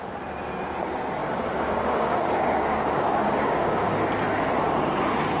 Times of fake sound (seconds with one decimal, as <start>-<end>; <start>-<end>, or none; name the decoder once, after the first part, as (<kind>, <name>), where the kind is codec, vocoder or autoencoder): 1.2-3.9 (codec, DAC)